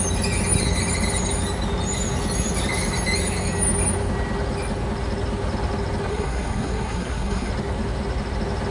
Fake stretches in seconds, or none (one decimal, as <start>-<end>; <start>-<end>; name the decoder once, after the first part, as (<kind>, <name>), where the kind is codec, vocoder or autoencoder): 6.1-7.5 (codec, SNAC)